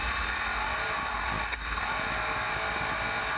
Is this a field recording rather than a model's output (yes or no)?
yes